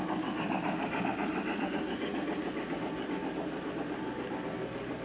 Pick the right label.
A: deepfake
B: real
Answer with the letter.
B